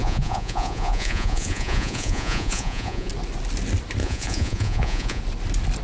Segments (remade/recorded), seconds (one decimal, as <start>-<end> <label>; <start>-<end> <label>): 0.0-3.1 remade; 3.1-4.0 recorded; 4.0-5.2 remade; 5.2-5.8 recorded